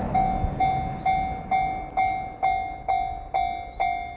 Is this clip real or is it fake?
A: real